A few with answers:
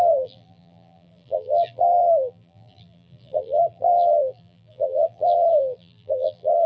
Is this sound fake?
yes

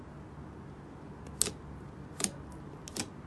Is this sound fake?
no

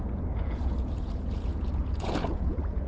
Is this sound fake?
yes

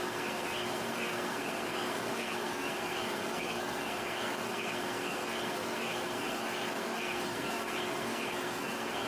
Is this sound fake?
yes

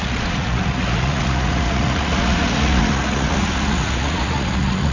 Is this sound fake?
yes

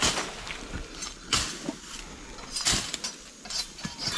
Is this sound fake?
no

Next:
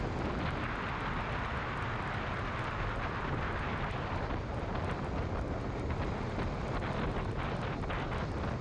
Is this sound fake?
no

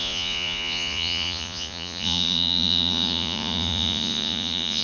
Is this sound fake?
yes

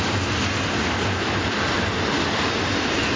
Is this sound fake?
no